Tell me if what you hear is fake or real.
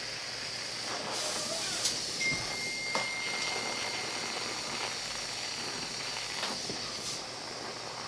real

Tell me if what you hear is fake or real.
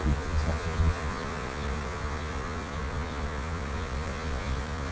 fake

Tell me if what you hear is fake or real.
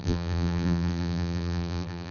fake